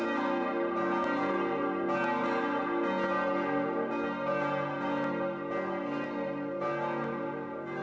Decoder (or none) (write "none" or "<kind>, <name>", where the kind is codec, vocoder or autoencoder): none